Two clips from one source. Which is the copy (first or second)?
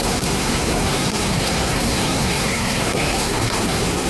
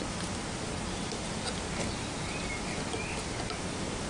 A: first